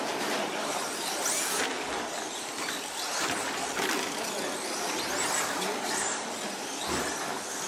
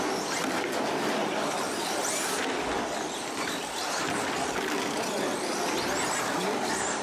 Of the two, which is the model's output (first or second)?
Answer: first